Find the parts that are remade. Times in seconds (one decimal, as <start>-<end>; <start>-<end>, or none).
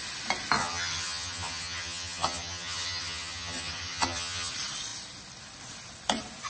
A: 0.6-4.5